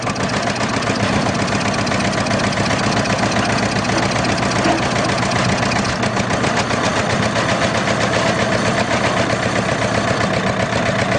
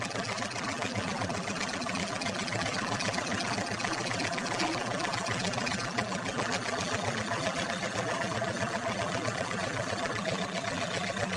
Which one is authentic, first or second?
first